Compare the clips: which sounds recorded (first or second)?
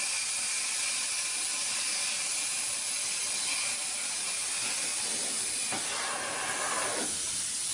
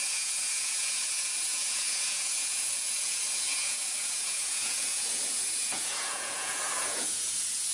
first